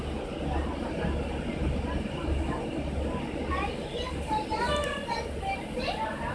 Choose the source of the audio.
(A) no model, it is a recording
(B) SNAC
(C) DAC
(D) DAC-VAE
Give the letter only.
A